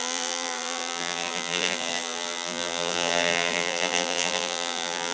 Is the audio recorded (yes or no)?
no